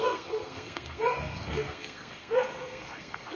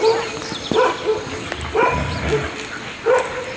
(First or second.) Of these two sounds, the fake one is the first